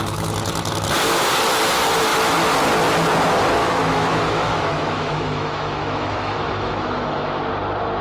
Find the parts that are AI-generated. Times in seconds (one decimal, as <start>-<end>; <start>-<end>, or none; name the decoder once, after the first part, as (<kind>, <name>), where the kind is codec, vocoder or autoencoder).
3.6-7.4 (autoencoder, DAC-VAE)